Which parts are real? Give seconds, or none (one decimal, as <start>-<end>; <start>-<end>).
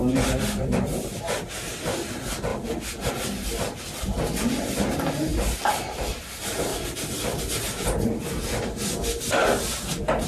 0.8-2.5; 3.1-6.7; 7.4-10.3